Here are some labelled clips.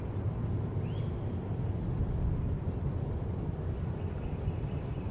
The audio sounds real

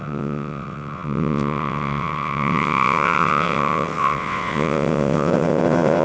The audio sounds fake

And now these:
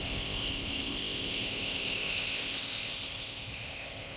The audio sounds fake